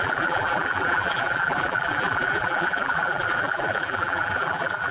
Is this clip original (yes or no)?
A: no